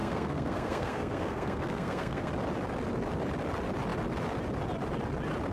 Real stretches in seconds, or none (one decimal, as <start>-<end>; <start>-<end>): 2.3-5.5